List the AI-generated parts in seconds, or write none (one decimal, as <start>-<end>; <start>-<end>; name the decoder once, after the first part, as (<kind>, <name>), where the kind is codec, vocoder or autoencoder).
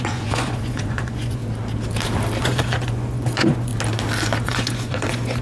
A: 0.0-1.4 (vocoder, Vocos); 2.4-3.7; 4.4-5.4